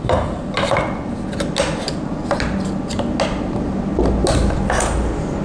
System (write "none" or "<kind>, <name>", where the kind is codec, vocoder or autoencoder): none